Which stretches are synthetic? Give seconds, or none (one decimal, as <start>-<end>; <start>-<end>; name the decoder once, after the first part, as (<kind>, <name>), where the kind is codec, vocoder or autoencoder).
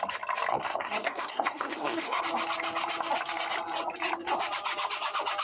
0.5-2.2 (codec, SNAC)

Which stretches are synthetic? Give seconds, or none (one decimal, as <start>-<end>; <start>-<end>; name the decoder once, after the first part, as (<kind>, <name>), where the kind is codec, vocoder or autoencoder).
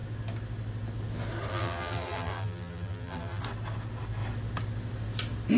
1.5-3.4 (vocoder, BigVGAN v2)